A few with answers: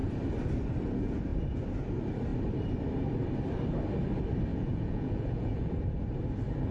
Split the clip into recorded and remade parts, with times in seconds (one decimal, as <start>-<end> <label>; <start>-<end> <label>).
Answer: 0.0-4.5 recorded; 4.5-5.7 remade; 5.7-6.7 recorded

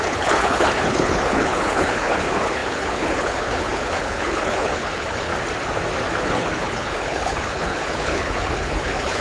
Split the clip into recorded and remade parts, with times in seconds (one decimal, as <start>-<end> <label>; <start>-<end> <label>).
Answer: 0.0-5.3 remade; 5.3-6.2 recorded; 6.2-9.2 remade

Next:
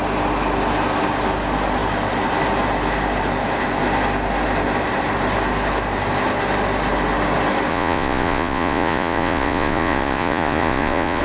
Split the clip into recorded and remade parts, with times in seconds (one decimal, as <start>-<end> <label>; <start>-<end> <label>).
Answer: 0.0-7.7 recorded; 7.7-11.2 remade

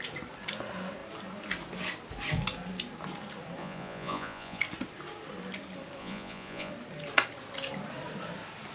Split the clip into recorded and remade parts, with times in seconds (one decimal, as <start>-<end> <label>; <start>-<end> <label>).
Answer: 0.0-3.6 recorded; 3.6-4.6 remade; 4.6-6.0 recorded; 6.0-6.7 remade; 6.7-8.7 recorded

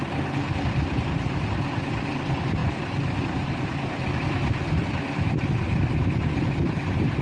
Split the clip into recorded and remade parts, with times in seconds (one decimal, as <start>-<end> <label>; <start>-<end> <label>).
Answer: 0.0-7.2 recorded

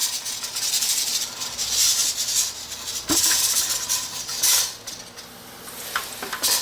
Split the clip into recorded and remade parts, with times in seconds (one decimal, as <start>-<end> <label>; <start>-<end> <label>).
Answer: 0.0-0.7 recorded; 0.7-2.0 remade; 2.0-2.5 recorded; 2.5-4.3 remade; 4.3-6.6 recorded

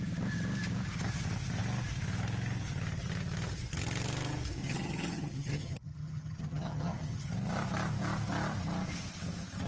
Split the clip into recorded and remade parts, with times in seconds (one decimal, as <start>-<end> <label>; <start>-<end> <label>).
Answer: 0.0-4.6 recorded; 4.6-7.3 remade; 7.3-9.7 recorded

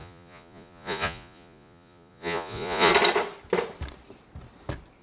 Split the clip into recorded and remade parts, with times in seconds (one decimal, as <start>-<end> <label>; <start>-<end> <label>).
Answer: 0.0-2.9 remade; 2.9-5.0 recorded